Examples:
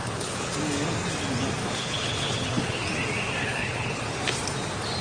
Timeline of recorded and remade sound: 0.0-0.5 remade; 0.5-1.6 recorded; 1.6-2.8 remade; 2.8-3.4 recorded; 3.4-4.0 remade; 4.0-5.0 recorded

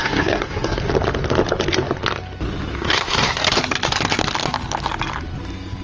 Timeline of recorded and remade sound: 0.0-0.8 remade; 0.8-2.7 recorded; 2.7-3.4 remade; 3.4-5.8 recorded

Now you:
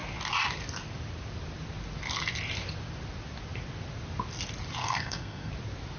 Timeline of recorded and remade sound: 0.0-4.8 recorded; 4.8-5.5 remade; 5.5-6.0 recorded

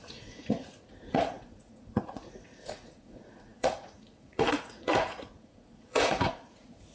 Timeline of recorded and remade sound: 0.0-6.9 remade

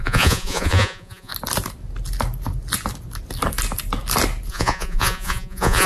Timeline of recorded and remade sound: 0.0-1.3 remade; 1.3-4.5 recorded; 4.5-5.9 remade

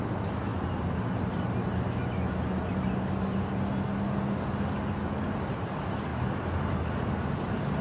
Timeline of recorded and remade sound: 0.0-7.8 recorded